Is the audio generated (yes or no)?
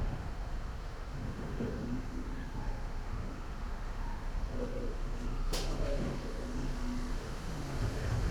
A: yes